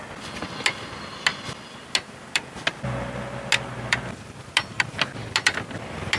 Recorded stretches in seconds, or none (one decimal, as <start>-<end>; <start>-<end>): 0.0-6.2